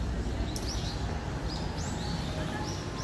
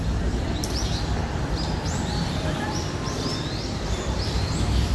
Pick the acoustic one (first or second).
first